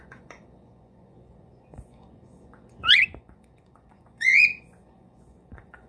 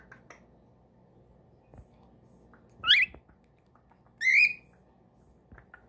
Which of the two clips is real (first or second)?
second